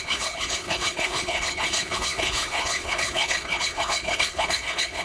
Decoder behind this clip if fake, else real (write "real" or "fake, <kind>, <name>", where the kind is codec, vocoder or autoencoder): fake, codec, HILCodec